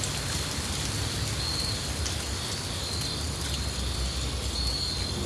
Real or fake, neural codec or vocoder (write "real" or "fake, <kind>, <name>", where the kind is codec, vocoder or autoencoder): real